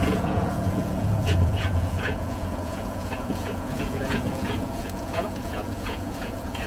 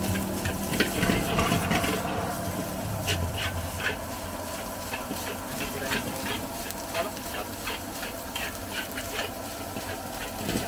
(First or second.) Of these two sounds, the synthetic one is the first